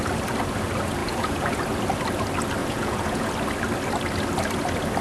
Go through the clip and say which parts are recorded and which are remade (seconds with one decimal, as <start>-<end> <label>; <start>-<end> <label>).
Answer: 0.0-1.0 recorded; 1.0-1.6 remade; 1.6-2.6 recorded; 2.6-3.3 remade; 3.3-5.0 recorded